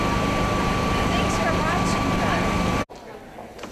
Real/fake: real